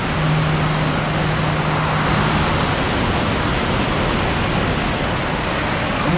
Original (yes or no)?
yes